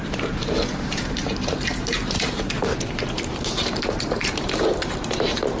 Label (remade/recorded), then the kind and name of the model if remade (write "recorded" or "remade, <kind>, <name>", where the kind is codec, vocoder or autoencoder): remade, vocoder, BigVGAN v2